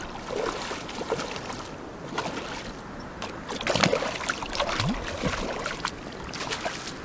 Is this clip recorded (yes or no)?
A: yes